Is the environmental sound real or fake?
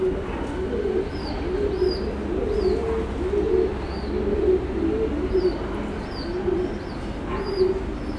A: real